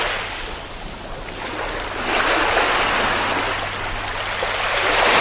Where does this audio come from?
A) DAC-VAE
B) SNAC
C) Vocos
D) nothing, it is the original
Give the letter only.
D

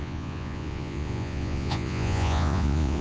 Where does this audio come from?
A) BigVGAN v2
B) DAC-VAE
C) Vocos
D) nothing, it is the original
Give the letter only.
C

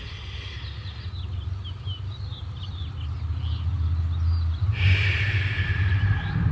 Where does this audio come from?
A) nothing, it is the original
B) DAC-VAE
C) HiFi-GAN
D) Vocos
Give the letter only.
A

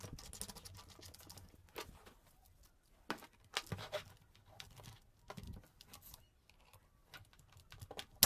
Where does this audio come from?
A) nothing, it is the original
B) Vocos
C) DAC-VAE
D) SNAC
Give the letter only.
A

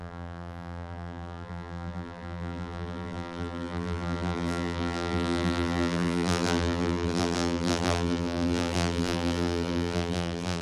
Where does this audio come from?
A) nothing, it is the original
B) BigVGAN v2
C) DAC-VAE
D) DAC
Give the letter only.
B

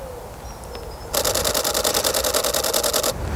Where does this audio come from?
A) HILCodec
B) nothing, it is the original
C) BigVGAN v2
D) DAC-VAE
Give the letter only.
B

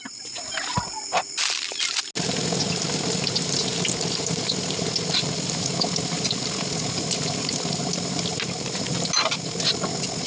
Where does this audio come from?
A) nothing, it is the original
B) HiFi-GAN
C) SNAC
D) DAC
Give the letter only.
A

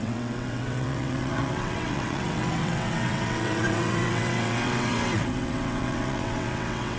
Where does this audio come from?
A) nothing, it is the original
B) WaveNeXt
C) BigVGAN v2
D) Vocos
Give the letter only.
B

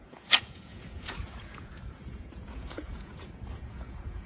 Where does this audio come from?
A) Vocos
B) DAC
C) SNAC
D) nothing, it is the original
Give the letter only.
A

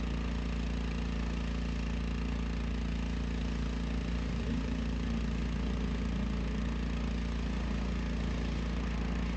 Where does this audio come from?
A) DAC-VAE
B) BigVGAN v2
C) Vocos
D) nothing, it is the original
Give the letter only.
D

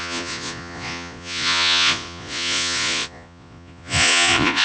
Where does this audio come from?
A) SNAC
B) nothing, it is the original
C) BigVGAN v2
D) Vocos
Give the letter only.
D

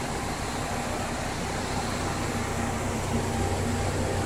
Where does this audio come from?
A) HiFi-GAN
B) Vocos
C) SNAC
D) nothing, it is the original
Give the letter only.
D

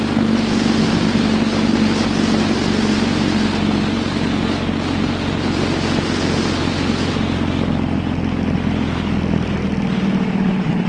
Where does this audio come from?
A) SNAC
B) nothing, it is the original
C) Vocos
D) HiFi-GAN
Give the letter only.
B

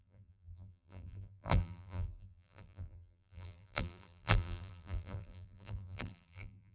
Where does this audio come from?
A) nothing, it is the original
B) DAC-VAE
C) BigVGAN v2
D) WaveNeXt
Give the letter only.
C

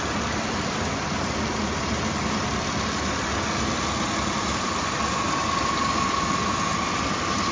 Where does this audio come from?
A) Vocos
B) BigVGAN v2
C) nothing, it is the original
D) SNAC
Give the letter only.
C